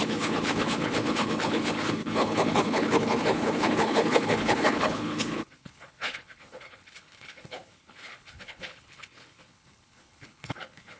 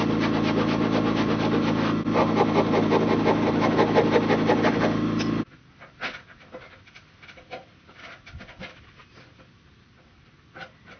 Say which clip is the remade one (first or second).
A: first